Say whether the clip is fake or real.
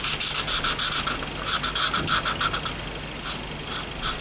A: real